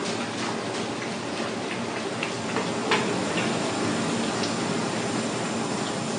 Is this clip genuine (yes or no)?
yes